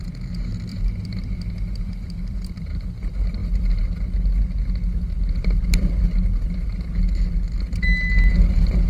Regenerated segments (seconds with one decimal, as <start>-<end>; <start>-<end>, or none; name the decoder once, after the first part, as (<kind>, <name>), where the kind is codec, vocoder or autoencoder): 0.7-2.6 (vocoder, BigVGAN v2)